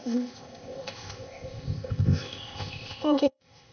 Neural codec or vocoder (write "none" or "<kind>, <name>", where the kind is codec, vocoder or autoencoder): codec, ZipCodec